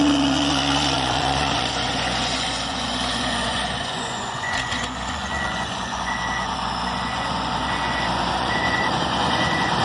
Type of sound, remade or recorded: remade